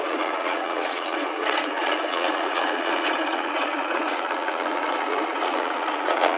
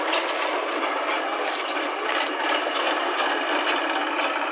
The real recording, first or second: second